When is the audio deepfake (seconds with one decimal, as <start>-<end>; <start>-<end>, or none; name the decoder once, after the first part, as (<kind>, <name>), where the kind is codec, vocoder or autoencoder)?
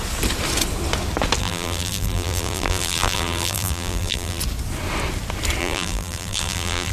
1.4-4.4 (vocoder, BigVGAN v2); 5.6-6.9